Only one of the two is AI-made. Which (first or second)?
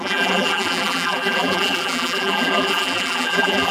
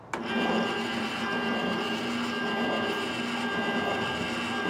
first